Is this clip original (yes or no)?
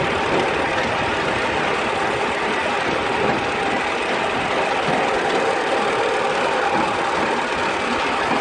yes